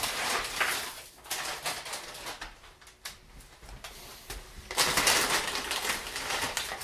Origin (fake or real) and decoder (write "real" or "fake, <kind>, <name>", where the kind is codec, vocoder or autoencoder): real